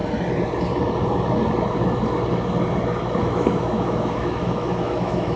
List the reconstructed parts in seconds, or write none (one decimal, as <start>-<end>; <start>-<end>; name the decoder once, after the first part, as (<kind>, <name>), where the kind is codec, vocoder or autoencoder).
3.2-5.4 (autoencoder, DAC-VAE)